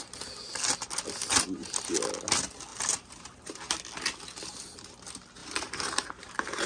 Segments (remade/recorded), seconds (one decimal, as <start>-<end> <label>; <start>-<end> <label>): 0.0-2.7 recorded; 2.7-3.7 remade; 3.7-5.4 recorded; 5.4-6.7 remade